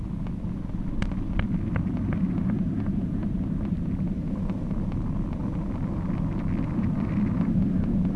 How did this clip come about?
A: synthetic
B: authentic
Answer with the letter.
B